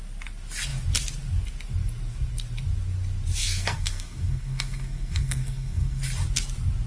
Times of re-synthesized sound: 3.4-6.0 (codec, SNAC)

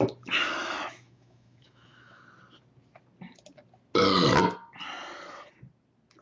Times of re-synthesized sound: 0.6-2.2 (autoencoder, DAC-VAE)

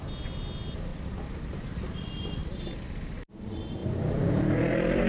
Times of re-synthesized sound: 0.9-1.6 (vocoder, BigVGAN v2); 2.4-3.3; 3.8-5.1

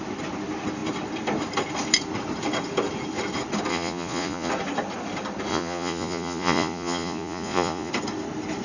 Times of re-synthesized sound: 3.7-4.5 (vocoder, Vocos); 5.5-7.9

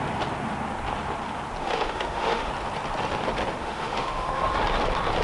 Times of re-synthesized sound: 1.6-2.5 (autoencoder, DAC-VAE); 3.6-4.4

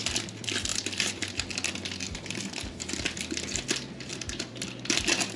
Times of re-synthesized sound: 0.7-2.4 (vocoder, BigVGAN v2); 4.1-4.9

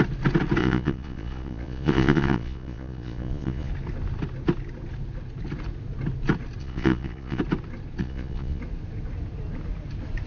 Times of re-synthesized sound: 0.6-3.7 (vocoder, Vocos); 6.6-7.4; 8.0-8.6